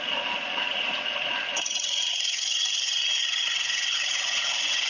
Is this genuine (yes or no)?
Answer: no